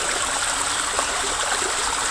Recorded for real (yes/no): yes